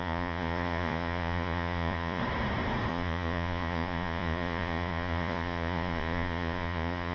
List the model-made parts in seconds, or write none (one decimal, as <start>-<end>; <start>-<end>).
0.0-2.2; 2.9-7.1